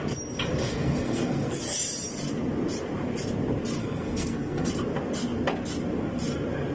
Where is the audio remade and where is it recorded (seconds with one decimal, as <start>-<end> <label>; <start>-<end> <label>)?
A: 0.0-0.6 recorded; 0.6-1.6 remade; 1.6-3.8 recorded; 3.8-4.7 remade; 4.7-6.7 recorded